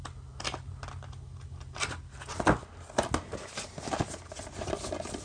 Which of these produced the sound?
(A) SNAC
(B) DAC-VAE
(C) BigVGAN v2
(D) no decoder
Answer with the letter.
D